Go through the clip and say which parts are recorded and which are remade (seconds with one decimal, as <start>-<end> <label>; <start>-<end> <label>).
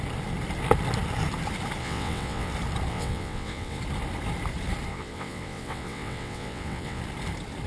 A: 0.0-1.8 recorded; 1.8-2.5 remade; 2.5-2.9 recorded; 2.9-3.8 remade; 3.8-4.9 recorded; 4.9-7.0 remade; 7.0-7.7 recorded